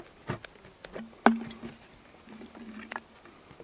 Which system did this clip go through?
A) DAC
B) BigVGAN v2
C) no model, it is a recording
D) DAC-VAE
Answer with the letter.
C